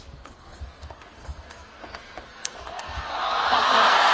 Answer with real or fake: fake